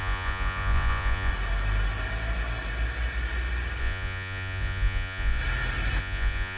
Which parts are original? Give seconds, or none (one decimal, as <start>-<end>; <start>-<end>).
1.3-3.8; 5.4-6.0

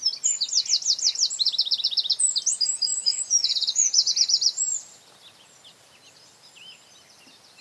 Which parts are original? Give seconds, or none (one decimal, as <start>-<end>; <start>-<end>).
0.0-2.9; 4.1-7.6

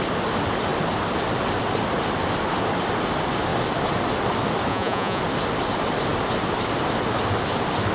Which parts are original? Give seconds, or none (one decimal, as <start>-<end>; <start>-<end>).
0.0-4.7; 5.2-7.9

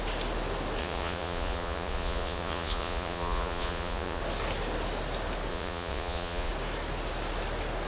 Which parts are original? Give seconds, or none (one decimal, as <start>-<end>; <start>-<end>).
0.0-0.8; 4.2-5.5; 6.5-7.9

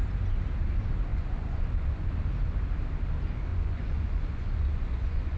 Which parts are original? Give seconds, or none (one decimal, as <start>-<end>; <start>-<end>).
0.0-1.1; 2.1-3.5